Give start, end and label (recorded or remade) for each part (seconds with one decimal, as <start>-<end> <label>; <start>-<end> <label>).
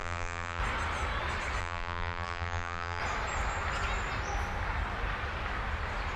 0.0-0.6 remade; 0.6-1.6 recorded; 1.6-3.0 remade; 3.0-6.2 recorded